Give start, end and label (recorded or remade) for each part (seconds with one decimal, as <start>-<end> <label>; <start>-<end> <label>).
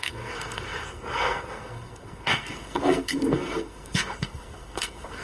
0.0-5.2 remade